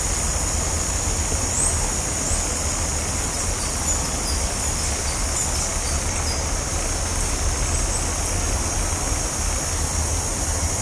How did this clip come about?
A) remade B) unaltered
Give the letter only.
B